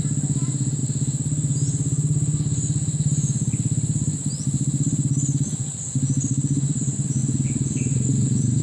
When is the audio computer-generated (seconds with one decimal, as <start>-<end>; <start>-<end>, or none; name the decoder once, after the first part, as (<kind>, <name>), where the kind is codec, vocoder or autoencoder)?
none